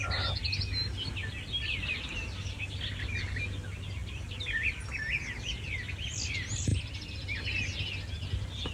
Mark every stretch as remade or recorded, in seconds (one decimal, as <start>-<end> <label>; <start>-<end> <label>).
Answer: 0.0-8.7 recorded